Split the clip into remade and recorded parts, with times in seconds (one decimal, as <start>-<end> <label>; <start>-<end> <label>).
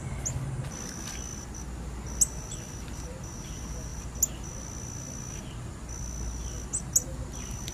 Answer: 0.0-7.7 recorded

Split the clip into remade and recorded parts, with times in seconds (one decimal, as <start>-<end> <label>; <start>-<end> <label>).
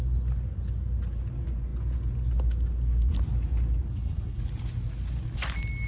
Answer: 0.0-3.9 recorded; 3.9-4.4 remade; 4.4-5.9 recorded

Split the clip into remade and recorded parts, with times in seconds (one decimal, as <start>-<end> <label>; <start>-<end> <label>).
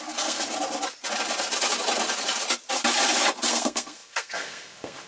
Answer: 0.0-0.4 remade; 0.4-3.5 recorded; 3.5-5.1 remade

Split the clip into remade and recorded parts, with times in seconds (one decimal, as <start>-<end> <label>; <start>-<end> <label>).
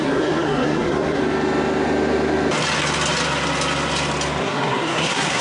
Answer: 0.0-1.2 remade; 1.2-4.4 recorded; 4.4-5.4 remade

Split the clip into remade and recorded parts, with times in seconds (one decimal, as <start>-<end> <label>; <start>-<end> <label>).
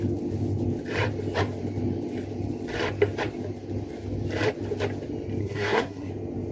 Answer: 0.0-5.4 recorded; 5.4-6.1 remade; 6.1-6.5 recorded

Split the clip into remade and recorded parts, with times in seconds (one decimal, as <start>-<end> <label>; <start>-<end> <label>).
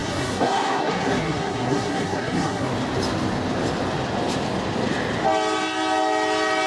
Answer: 0.0-2.7 remade; 2.7-6.7 recorded